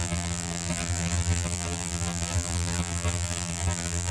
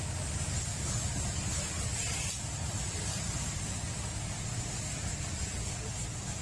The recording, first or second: second